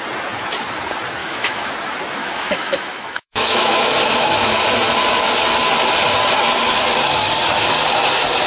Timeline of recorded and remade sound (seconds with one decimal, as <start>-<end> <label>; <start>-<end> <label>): 0.0-1.2 recorded; 1.2-1.7 remade; 1.7-2.2 recorded; 2.2-4.6 remade; 4.6-8.5 recorded